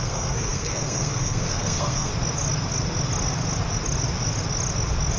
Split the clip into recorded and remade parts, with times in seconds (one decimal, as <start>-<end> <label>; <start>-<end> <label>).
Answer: 0.0-2.1 remade; 2.1-5.2 recorded